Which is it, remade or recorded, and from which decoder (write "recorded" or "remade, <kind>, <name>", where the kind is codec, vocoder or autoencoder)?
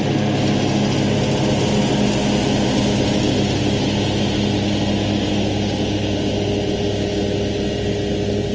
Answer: recorded